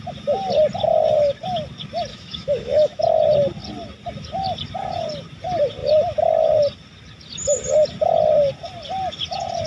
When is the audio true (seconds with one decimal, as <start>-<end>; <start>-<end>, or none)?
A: 0.0-2.1; 3.0-9.7